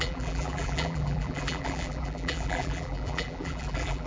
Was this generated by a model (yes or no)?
yes